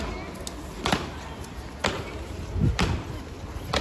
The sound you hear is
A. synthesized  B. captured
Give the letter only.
B